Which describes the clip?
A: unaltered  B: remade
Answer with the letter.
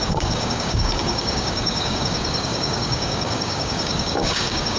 B